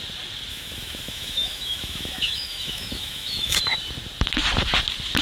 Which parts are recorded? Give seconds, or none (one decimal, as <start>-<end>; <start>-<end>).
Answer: 0.0-0.5; 3.6-5.2